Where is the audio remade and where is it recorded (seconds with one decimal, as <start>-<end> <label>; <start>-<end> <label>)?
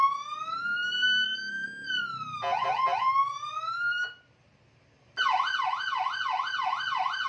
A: 0.0-7.3 recorded